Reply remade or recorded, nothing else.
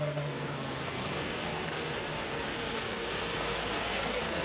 remade